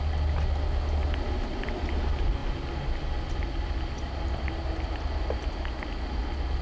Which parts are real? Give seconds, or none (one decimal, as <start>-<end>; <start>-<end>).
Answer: 0.0-6.6

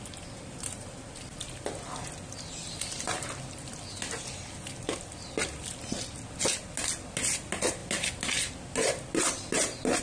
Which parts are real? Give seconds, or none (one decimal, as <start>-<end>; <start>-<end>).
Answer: 0.0-10.0